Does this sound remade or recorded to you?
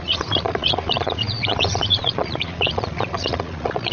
remade